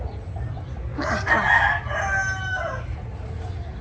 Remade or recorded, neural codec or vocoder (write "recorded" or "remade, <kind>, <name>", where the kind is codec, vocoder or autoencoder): recorded